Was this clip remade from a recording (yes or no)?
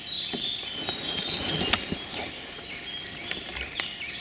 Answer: no